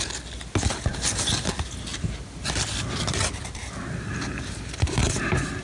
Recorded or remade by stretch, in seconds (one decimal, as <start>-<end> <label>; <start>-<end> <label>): 0.0-1.9 recorded; 1.9-5.0 remade; 5.0-5.6 recorded